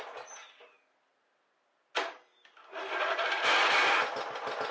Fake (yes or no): no